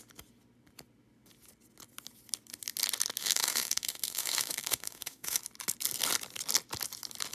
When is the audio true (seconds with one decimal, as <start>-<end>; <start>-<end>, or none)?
0.0-3.2; 5.4-7.3